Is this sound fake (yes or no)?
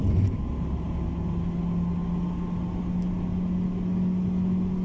no